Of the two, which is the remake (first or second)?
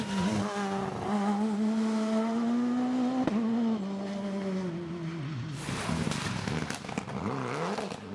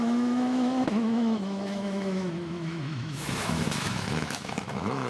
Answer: second